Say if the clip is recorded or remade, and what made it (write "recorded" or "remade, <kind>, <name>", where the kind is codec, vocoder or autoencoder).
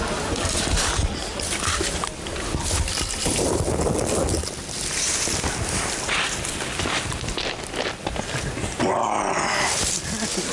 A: recorded